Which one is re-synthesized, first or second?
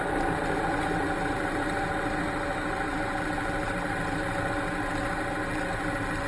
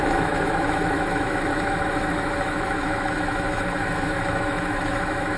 second